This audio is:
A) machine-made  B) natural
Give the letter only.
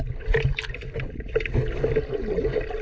B